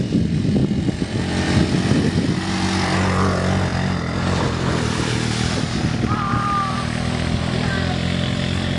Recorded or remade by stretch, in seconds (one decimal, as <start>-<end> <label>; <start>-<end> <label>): 0.0-0.6 recorded; 0.6-1.6 remade; 1.6-3.7 recorded; 3.7-5.6 remade; 5.6-8.8 recorded